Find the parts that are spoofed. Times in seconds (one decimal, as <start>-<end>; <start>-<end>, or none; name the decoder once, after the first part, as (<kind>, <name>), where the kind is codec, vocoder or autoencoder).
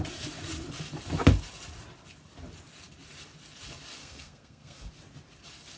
4.0-4.9 (codec, SNAC)